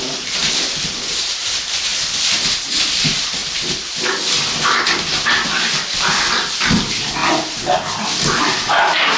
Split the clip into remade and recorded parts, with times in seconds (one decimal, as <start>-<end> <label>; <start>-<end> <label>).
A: 0.0-0.4 remade; 0.4-1.4 recorded; 1.4-1.9 remade; 1.9-2.7 recorded; 2.7-7.2 remade; 7.2-8.4 recorded; 8.4-9.2 remade